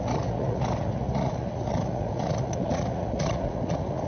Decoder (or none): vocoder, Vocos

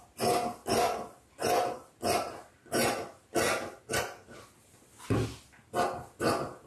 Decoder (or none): none